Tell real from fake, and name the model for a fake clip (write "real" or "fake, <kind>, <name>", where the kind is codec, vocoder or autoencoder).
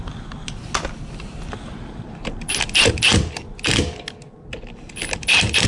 real